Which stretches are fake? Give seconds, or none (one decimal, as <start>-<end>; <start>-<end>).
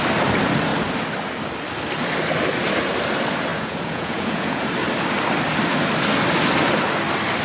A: 3.5-4.6